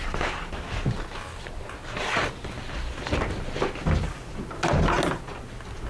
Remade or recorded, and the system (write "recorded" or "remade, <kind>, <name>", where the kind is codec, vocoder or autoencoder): recorded